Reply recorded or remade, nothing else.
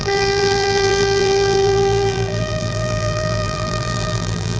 remade